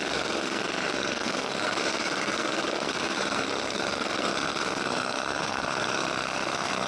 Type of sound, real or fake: fake